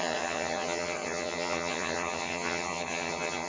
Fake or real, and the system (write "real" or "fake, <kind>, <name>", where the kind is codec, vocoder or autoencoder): fake, vocoder, HiFi-GAN